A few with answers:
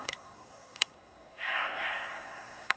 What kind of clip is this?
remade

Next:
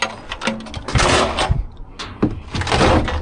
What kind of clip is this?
recorded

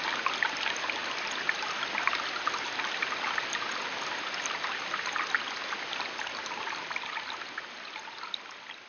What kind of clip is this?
recorded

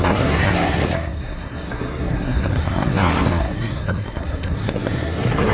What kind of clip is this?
remade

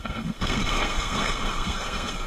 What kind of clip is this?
remade